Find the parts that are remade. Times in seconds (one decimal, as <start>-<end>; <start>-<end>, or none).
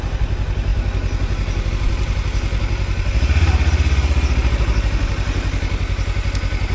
none